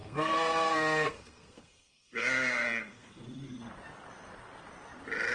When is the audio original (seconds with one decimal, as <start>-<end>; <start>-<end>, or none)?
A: 3.2-5.3